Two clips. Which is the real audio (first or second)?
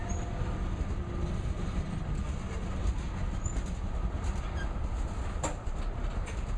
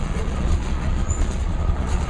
first